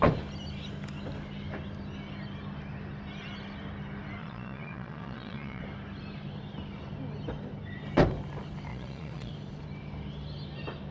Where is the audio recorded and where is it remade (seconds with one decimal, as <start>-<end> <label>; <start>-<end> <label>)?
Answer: 0.0-4.2 recorded; 4.2-5.6 remade; 5.6-8.7 recorded; 8.7-9.3 remade; 9.3-10.9 recorded